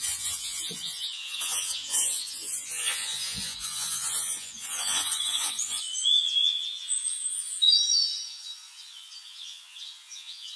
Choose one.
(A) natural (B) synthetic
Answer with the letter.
B